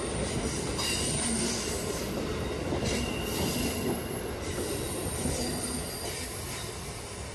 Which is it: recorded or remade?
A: recorded